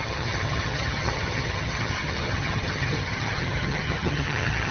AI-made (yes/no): yes